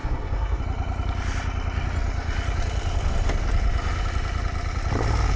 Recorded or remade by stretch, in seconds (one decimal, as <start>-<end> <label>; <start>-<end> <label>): 0.0-0.6 remade; 0.6-5.4 recorded

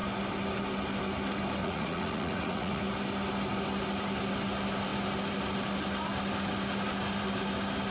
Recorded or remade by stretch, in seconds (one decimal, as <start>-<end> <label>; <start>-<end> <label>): 0.0-1.6 recorded; 1.6-2.8 remade; 2.8-7.9 recorded